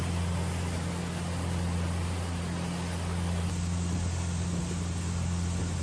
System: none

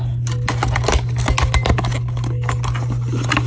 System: none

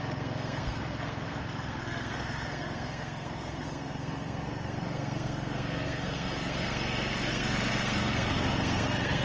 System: codec, SNAC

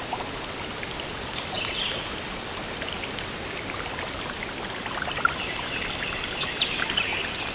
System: none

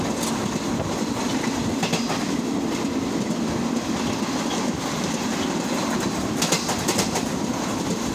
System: none